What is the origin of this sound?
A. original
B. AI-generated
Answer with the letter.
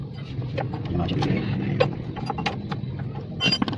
A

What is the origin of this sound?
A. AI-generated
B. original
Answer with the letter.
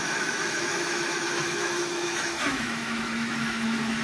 A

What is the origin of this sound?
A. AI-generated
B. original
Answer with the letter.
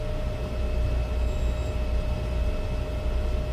B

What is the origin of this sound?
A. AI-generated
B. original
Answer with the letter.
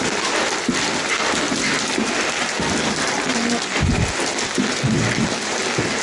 B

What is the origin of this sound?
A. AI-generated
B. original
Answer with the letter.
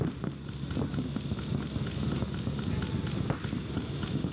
B